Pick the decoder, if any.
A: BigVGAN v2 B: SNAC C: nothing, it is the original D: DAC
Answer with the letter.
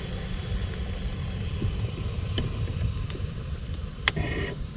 A